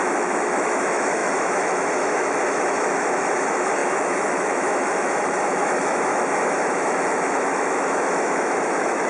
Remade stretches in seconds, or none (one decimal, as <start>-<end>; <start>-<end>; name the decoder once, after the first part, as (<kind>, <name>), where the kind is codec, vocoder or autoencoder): 0.0-9.1 (autoencoder, DAC-VAE)